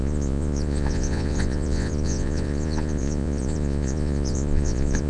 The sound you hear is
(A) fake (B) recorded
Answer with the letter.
A